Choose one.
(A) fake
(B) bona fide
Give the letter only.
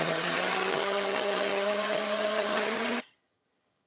A